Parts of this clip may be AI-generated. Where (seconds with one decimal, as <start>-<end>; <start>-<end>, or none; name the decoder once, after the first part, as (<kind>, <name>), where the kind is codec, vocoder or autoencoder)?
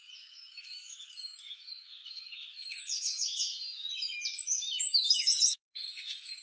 0.0-6.4 (autoencoder, DAC-VAE)